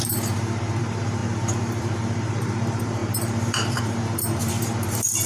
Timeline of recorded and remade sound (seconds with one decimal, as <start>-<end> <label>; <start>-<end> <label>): 0.0-5.3 remade